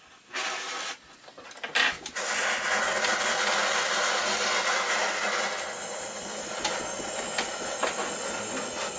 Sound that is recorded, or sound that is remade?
recorded